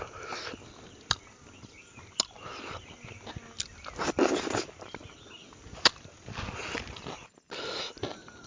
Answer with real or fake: real